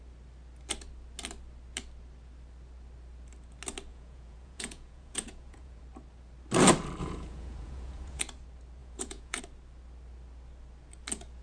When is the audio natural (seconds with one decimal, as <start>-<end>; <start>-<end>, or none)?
0.0-3.9; 5.8-7.0; 8.2-8.8; 9.4-11.4